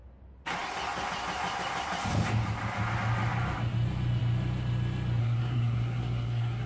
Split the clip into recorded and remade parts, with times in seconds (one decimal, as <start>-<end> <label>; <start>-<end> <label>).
0.0-5.2 recorded; 5.2-6.7 remade